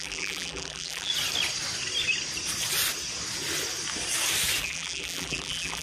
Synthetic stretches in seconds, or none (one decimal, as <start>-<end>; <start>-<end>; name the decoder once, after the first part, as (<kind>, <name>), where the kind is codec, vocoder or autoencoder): 0.0-1.1 (vocoder, BigVGAN v2); 4.6-5.8